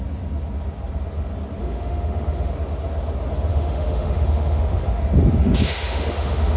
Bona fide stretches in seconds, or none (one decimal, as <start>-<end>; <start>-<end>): 0.0-1.6; 2.5-3.5; 5.0-5.4